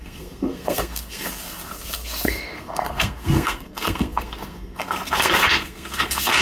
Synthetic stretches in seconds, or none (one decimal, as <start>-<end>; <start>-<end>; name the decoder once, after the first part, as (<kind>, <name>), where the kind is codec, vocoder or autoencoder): 0.0-6.4 (codec, SNAC)